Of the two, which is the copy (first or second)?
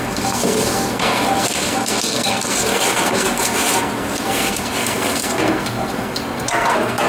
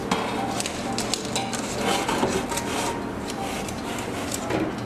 first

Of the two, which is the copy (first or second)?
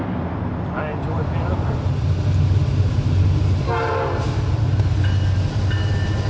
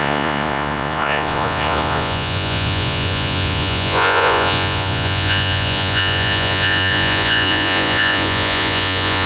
second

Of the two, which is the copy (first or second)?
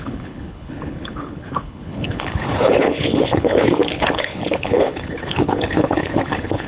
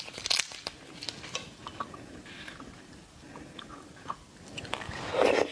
first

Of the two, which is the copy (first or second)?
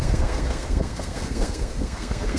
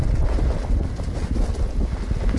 first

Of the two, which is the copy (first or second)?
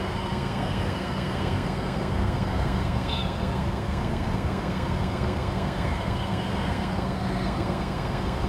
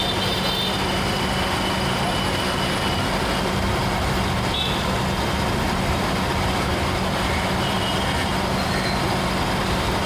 first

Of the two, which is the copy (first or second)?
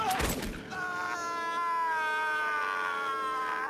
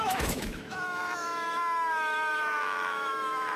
second